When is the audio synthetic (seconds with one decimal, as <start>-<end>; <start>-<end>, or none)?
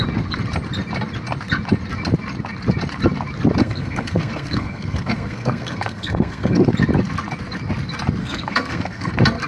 3.6-6.7; 8.2-9.1